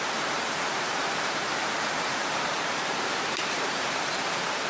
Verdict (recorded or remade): remade